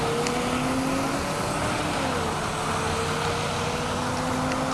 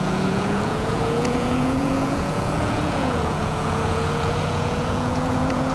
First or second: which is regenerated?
second